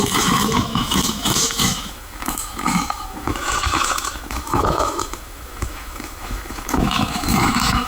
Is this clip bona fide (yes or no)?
no